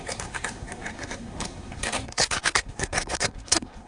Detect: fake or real fake